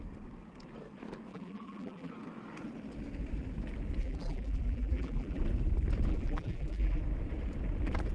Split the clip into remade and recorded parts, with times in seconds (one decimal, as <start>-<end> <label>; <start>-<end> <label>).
0.0-1.3 recorded; 1.3-2.1 remade; 2.1-4.0 recorded; 4.0-5.4 remade; 5.4-6.1 recorded; 6.1-7.0 remade; 7.0-8.1 recorded